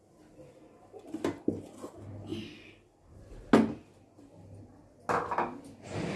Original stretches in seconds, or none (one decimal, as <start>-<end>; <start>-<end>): 0.0-6.2